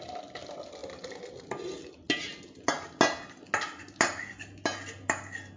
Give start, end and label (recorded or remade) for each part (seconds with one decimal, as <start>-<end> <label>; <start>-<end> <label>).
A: 0.0-5.6 recorded